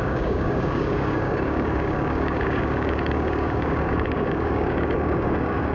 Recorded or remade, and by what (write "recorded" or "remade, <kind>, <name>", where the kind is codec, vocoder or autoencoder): remade, codec, DAC